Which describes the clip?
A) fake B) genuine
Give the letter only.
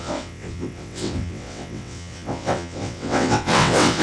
A